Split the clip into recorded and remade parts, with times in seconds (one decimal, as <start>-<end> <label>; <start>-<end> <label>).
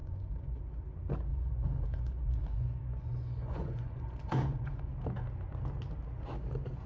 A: 0.0-0.6 remade; 0.6-1.3 recorded; 1.3-4.9 remade; 4.9-6.9 recorded